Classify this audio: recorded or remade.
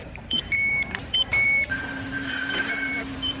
remade